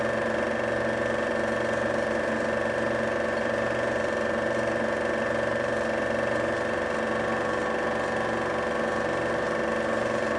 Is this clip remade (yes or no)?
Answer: no